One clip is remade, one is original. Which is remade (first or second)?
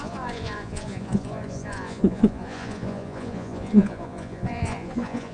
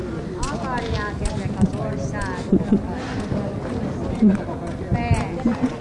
first